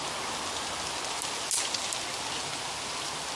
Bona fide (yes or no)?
yes